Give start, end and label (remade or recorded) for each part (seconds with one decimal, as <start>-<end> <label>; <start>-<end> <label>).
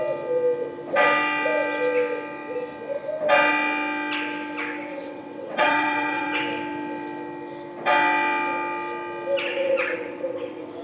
0.0-4.9 recorded; 4.9-6.4 remade; 6.4-9.5 recorded; 9.5-10.8 remade